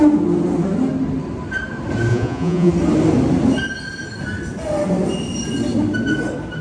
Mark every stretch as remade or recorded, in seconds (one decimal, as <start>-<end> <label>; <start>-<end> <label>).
0.0-2.1 recorded; 2.1-2.7 remade; 2.7-6.6 recorded